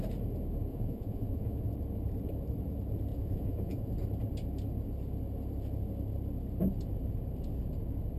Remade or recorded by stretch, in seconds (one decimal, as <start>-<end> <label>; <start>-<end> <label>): 0.0-0.7 recorded; 0.7-1.6 remade; 1.6-3.1 recorded; 3.1-3.9 remade; 3.9-8.2 recorded